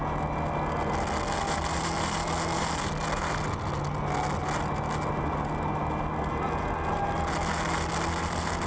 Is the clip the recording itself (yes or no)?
yes